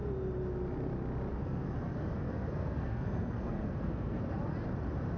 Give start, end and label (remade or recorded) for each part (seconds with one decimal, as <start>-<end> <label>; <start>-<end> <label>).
0.0-1.4 recorded; 1.4-4.2 remade; 4.2-5.2 recorded